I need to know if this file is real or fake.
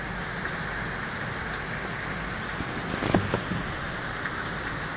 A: real